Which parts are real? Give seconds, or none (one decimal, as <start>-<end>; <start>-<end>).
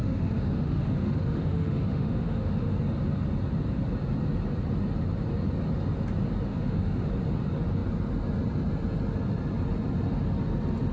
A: 2.7-6.5; 7.1-10.9